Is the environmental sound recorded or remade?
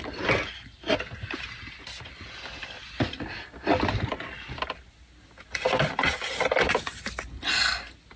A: recorded